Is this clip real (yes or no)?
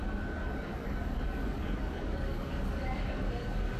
no